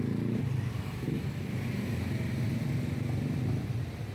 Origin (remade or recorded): recorded